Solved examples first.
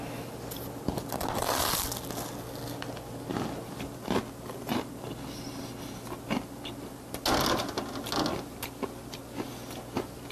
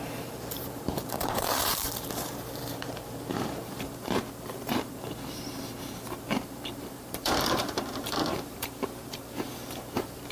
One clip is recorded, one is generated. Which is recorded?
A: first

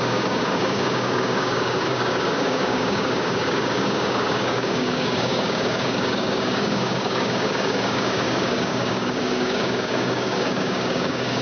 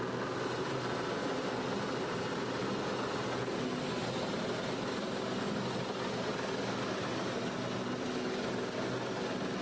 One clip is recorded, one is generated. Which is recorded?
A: second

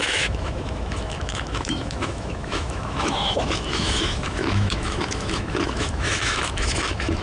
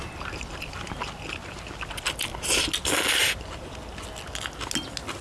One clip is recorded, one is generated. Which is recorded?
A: second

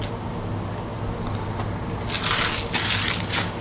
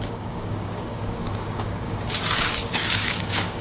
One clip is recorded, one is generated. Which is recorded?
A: first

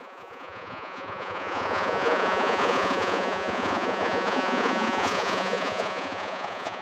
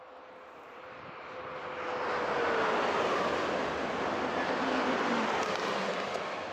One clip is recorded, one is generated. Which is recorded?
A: second